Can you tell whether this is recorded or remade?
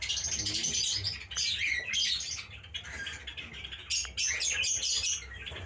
recorded